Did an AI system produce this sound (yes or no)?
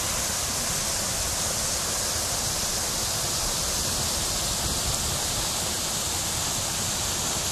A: no